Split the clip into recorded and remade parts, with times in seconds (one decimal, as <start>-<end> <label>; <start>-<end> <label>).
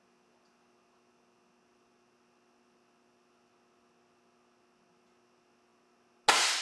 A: 0.0-6.6 recorded